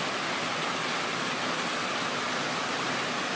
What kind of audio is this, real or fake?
real